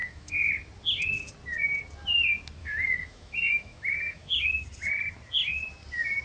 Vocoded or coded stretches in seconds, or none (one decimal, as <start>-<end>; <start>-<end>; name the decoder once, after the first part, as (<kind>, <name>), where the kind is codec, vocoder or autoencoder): 0.0-0.5 (autoencoder, DAC-VAE); 2.6-4.5